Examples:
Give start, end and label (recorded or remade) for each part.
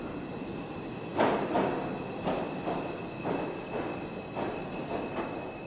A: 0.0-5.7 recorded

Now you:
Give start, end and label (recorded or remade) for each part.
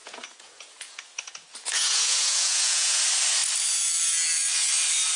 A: 0.0-3.0 remade; 3.0-5.2 recorded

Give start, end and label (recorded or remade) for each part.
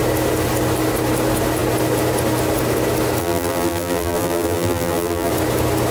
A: 0.0-3.2 recorded; 3.2-5.3 remade; 5.3-5.9 recorded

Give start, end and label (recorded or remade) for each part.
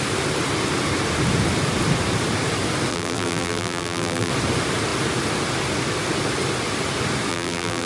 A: 0.0-2.9 recorded; 2.9-4.3 remade; 4.3-7.3 recorded; 7.3-7.9 remade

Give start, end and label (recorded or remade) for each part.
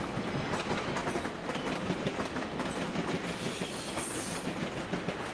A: 0.0-5.3 recorded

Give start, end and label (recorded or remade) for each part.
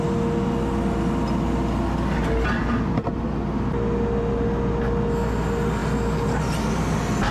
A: 0.0-7.3 recorded